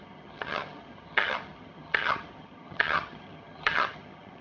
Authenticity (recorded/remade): remade